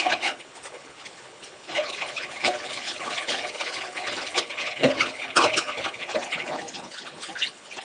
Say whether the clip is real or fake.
fake